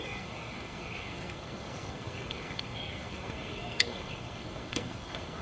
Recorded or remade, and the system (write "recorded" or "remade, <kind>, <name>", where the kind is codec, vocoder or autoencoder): remade, codec, SNAC